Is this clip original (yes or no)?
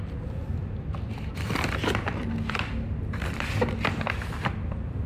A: no